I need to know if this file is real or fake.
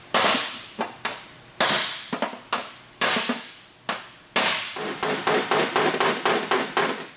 real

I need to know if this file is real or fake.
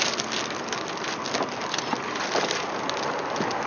real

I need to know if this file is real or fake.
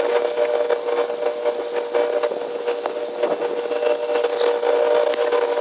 real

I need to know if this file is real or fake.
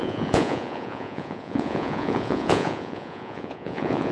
fake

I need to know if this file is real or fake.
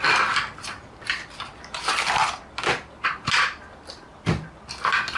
real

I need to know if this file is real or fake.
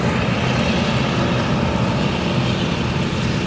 real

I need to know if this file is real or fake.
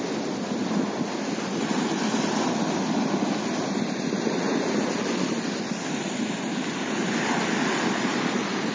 real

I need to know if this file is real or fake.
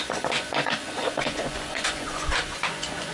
fake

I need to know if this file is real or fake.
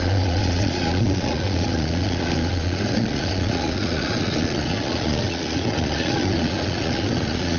fake